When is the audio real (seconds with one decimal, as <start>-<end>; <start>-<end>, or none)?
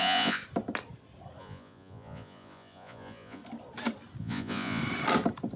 0.4-1.4; 3.4-4.2; 4.8-5.6